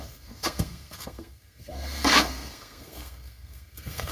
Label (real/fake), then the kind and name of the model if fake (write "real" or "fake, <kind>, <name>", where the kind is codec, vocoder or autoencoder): fake, codec, SNAC